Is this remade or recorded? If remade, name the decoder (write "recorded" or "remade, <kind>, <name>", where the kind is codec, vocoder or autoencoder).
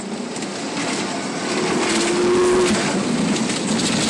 recorded